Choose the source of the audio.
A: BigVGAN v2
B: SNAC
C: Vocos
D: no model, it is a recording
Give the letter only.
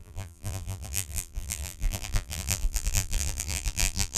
A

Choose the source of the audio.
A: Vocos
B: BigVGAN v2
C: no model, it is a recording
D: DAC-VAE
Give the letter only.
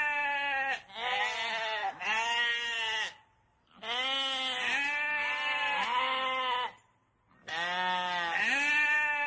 C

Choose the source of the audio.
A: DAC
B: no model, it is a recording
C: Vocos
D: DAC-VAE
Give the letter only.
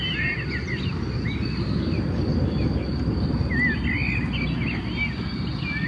B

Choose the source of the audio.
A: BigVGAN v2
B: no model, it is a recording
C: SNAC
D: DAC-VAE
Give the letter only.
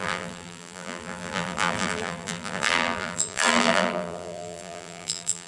A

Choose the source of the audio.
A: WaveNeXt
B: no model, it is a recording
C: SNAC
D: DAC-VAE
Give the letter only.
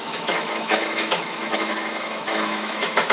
D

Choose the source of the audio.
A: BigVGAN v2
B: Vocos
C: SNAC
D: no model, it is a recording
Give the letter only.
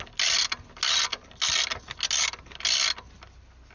D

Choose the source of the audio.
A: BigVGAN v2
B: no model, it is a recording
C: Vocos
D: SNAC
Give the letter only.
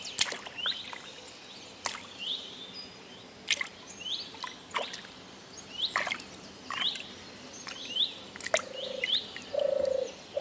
B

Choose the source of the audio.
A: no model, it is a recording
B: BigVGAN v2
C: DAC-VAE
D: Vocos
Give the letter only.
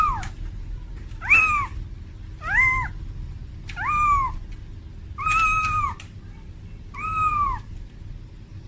A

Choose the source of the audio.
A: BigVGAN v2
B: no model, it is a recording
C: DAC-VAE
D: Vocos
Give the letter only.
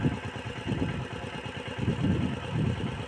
B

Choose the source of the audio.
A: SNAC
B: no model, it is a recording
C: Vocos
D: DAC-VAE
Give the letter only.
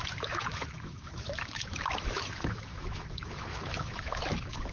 D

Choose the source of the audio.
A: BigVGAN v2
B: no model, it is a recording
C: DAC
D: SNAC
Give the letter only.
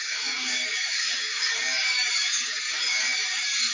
C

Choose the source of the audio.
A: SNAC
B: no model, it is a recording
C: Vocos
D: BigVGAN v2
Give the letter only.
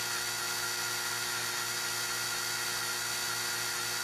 B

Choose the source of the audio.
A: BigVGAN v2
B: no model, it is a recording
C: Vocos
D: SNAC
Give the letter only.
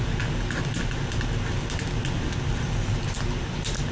B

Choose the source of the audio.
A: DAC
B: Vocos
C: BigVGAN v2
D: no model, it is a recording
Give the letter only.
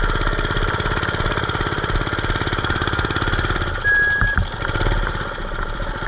D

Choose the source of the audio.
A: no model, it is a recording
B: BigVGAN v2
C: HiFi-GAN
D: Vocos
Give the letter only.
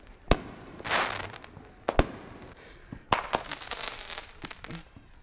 A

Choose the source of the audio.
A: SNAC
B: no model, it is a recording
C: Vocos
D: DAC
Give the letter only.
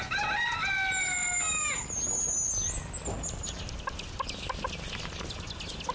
B